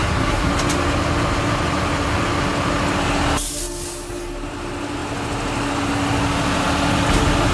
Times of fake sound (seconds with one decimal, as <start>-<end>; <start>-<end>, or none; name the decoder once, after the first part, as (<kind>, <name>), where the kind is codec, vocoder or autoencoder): 0.0-0.5 (codec, SNAC)